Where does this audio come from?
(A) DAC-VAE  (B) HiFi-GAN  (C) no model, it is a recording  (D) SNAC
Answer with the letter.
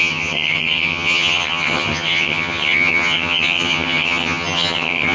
B